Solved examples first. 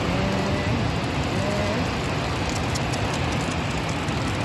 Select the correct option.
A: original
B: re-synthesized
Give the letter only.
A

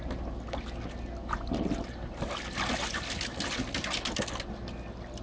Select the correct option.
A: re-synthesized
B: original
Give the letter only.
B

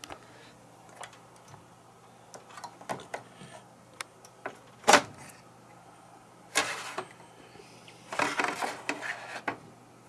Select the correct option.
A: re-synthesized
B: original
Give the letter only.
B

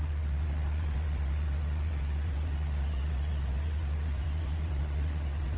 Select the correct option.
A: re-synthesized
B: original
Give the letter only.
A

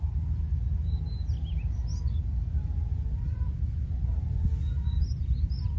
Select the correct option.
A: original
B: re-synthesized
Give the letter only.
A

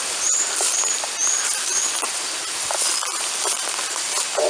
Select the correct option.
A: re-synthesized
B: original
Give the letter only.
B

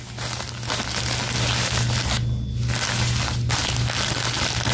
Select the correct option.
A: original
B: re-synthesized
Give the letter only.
A